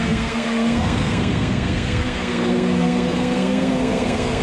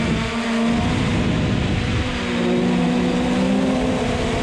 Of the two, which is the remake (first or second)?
first